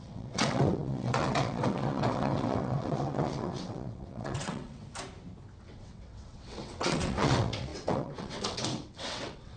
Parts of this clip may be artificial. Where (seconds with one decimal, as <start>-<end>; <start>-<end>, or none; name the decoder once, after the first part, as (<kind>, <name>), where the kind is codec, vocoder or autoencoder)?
0.0-4.8 (vocoder, WaveNeXt); 5.6-9.6